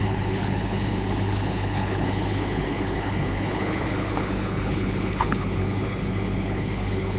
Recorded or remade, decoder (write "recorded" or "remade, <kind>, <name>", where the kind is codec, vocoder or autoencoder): remade, codec, HILCodec